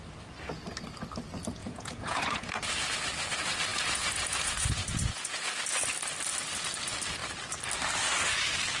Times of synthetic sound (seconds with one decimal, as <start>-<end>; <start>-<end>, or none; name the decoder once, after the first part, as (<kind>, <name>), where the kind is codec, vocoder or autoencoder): 1.6-2.6 (vocoder, Vocos); 3.7-5.5